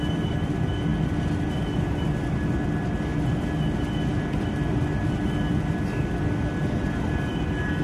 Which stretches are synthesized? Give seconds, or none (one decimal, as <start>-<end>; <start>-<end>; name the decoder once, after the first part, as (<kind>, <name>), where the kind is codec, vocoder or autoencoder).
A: none